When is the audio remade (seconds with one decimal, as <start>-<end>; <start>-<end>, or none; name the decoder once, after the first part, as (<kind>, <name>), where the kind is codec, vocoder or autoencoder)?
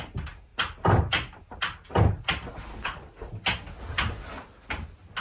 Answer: 2.7-3.3 (codec, HILCodec)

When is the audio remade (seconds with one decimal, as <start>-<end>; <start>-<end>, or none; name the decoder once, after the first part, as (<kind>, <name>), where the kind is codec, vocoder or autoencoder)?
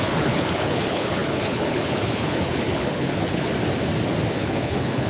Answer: 0.0-3.5 (codec, HILCodec); 4.3-5.1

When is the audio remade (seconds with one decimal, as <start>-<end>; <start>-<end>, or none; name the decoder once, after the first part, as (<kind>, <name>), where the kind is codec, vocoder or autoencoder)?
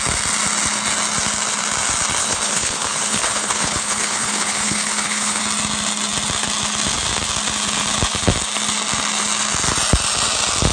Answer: 2.2-5.4 (codec, HILCodec)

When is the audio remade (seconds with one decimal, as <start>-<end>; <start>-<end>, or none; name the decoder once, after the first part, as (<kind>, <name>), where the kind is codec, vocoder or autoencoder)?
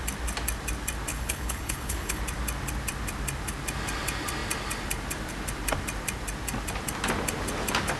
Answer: 1.1-2.2 (codec, HILCodec)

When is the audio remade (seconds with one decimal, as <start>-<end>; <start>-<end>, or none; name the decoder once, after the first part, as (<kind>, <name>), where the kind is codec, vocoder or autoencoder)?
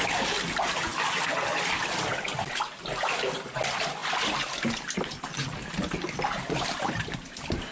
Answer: none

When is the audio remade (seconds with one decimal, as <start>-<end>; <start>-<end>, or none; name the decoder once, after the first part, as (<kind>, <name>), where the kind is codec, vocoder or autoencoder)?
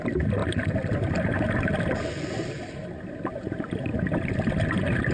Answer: none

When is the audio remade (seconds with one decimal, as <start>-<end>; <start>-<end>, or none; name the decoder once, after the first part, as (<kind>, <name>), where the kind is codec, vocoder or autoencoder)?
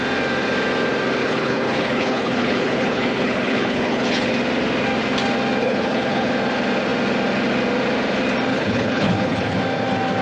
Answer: 1.2-4.3 (codec, HILCodec); 5.6-6.3; 8.5-9.6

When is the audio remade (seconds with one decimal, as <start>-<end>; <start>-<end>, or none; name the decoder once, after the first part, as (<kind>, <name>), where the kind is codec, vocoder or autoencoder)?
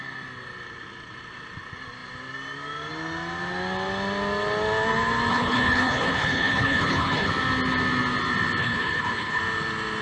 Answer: 5.3-7.3 (codec, HILCodec); 8.6-9.4